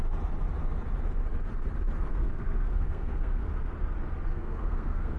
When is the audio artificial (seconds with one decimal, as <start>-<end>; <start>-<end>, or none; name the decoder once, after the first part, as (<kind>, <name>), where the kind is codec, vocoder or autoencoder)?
2.1-3.5 (codec, SNAC); 4.3-5.2